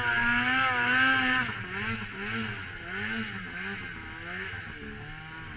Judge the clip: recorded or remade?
recorded